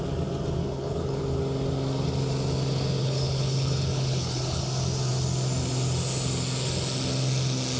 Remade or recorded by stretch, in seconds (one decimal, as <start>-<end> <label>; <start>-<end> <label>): 0.0-0.6 recorded; 0.6-1.2 remade; 1.2-3.0 recorded; 3.0-4.6 remade; 4.6-7.8 recorded